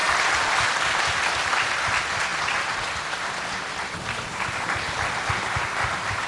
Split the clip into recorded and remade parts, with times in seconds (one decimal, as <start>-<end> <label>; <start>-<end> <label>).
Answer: 0.0-6.3 recorded